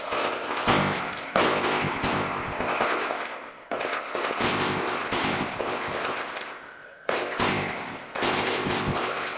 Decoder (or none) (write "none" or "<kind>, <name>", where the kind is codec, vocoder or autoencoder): codec, ZipCodec